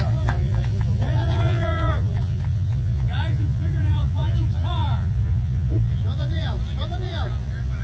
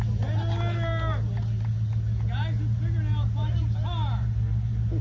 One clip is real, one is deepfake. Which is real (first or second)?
second